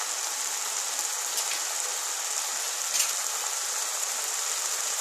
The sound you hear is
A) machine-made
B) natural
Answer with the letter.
B